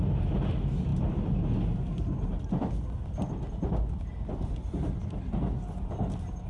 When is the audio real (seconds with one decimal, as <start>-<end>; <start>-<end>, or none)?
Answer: 0.0-0.9; 1.4-6.5